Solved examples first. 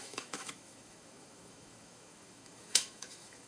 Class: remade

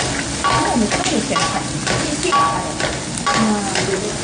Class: recorded